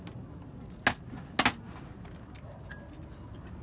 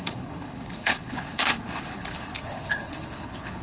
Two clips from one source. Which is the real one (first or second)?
first